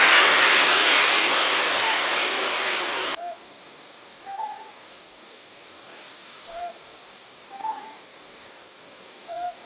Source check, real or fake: fake